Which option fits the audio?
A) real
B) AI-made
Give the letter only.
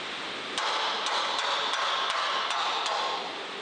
A